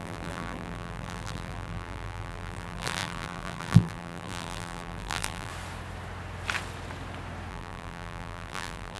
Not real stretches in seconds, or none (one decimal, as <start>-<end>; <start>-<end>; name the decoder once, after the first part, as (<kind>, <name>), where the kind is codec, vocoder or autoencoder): 0.0-5.5 (vocoder, BigVGAN v2); 7.5-9.0